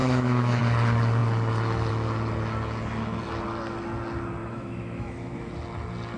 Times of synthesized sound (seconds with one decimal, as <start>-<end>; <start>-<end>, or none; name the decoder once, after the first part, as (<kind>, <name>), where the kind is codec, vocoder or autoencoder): 0.0-0.6 (autoencoder, DAC-VAE); 4.4-5.5